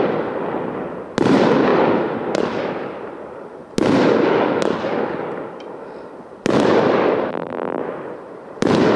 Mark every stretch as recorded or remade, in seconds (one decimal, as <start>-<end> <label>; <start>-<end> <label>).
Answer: 0.0-7.3 recorded; 7.3-7.8 remade; 7.8-9.0 recorded